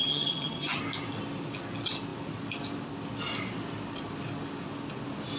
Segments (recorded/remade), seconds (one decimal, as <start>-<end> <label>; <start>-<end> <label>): 0.0-0.8 remade; 0.8-5.4 recorded